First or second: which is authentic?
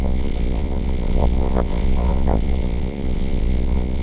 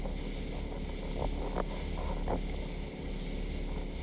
second